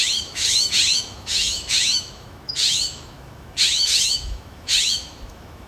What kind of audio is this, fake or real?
fake